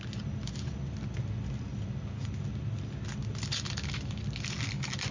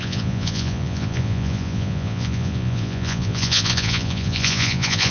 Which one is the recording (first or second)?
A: first